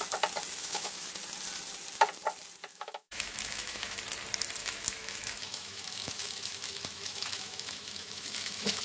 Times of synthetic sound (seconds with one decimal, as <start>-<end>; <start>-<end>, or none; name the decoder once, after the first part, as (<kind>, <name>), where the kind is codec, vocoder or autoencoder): 0.6-1.1 (autoencoder, DAC-VAE); 2.7-4.0; 4.6-8.8